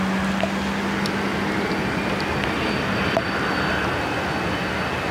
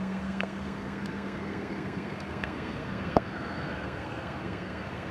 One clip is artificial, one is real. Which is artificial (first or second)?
second